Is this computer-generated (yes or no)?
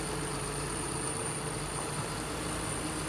yes